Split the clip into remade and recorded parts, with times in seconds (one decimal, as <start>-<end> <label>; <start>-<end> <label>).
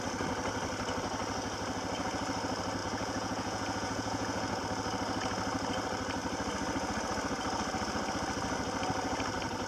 0.0-2.8 recorded; 2.8-4.6 remade; 4.6-9.7 recorded